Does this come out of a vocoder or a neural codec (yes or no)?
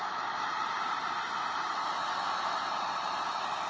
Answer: no